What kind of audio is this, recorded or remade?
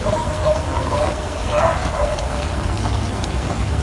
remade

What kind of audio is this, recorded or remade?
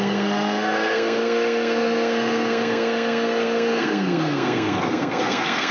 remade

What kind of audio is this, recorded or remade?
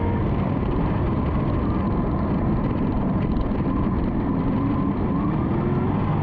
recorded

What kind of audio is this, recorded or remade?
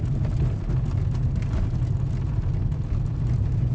recorded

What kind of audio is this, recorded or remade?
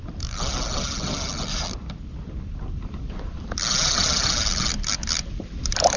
remade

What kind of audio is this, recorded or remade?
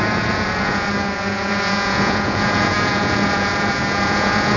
remade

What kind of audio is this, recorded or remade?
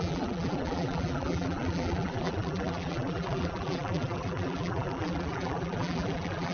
remade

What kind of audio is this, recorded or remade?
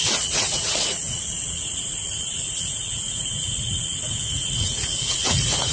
remade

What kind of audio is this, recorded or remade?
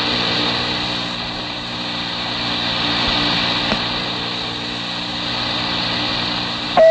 recorded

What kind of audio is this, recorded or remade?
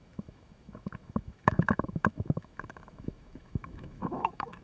remade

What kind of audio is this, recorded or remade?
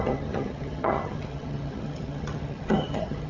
remade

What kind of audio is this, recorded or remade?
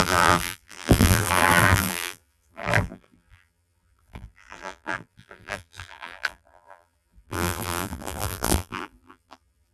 remade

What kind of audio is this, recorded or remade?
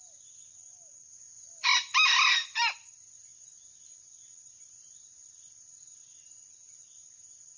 recorded